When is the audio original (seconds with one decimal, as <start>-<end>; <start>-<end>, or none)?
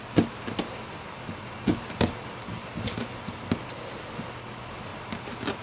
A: 0.0-5.6